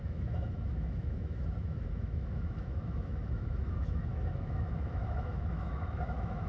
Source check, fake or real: fake